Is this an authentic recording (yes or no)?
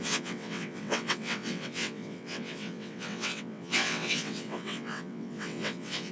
no